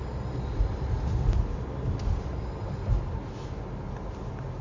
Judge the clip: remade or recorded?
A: recorded